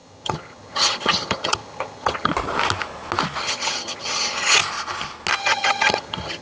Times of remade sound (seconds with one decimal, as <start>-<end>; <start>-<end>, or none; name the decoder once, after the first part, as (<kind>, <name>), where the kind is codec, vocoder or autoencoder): 0.0-2.3 (vocoder, HiFi-GAN); 3.4-4.6; 5.4-6.4